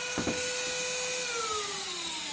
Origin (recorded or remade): recorded